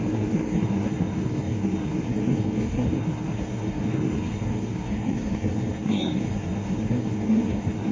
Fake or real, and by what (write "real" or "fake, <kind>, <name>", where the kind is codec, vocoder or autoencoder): fake, codec, SNAC